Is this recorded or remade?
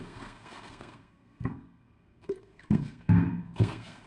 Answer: remade